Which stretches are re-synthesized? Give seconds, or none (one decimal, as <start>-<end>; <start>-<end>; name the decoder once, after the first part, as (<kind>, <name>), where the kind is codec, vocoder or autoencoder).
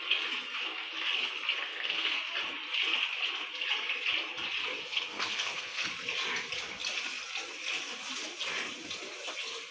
1.7-2.2 (codec, SNAC); 4.6-5.9